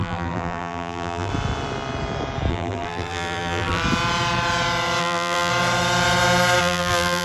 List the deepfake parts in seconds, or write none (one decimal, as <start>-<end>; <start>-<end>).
0.0-1.3; 2.5-3.8; 5.0-5.5; 6.6-7.2